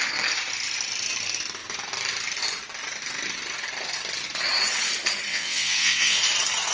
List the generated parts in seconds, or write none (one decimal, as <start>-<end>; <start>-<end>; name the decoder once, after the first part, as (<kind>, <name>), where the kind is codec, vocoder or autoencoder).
5.3-6.2 (vocoder, WaveNeXt)